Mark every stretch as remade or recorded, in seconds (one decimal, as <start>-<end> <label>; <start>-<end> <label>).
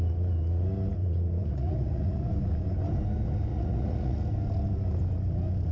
0.0-1.0 recorded; 1.0-2.3 remade; 2.3-3.5 recorded; 3.5-4.2 remade; 4.2-5.7 recorded